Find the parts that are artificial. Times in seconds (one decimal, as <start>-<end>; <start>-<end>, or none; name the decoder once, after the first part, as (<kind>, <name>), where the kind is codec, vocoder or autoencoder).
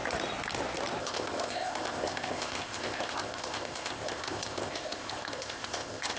1.0-6.2 (codec, ZipCodec)